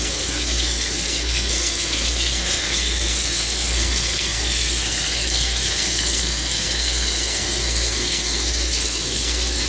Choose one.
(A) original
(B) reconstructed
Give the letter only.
B